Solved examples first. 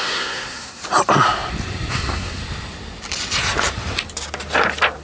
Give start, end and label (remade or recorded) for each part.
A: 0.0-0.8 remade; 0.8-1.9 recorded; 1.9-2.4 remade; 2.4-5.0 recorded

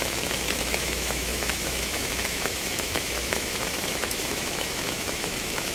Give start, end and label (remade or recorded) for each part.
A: 0.0-5.7 remade

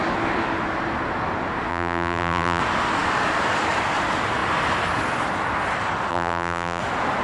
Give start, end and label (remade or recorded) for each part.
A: 0.0-1.7 recorded; 1.7-2.6 remade; 2.6-6.1 recorded; 6.1-6.8 remade; 6.8-7.2 recorded

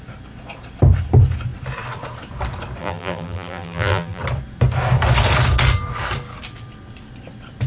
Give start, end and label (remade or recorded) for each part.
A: 0.0-2.8 recorded; 2.8-4.2 remade; 4.2-7.7 recorded

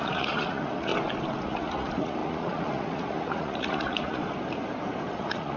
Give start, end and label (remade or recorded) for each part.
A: 0.0-0.9 remade; 0.9-1.4 recorded; 1.4-4.2 remade; 4.2-5.1 recorded; 5.1-5.6 remade

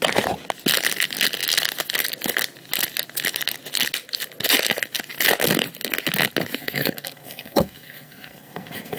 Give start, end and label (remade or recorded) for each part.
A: 0.0-6.6 recorded; 6.6-9.0 remade

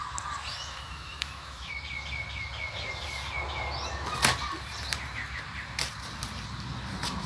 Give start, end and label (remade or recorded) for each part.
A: 0.0-0.5 recorded; 0.5-1.7 remade; 1.7-7.3 recorded